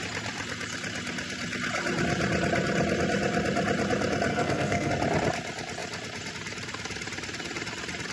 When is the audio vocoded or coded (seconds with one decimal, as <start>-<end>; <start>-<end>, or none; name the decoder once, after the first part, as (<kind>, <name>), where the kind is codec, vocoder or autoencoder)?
4.3-4.9 (codec, SNAC)